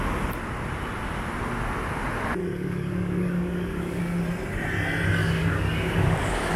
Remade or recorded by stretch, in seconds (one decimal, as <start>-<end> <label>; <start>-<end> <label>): 0.0-2.4 recorded; 2.4-4.0 remade; 4.0-5.2 recorded; 5.2-6.6 remade